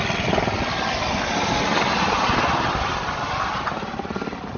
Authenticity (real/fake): real